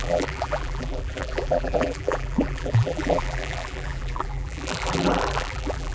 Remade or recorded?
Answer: remade